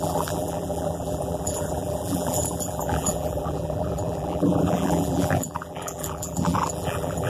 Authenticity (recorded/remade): remade